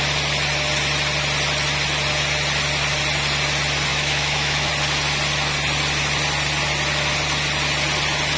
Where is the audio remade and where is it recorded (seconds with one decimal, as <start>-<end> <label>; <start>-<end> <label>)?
0.0-3.9 recorded; 3.9-4.7 remade; 4.7-8.4 recorded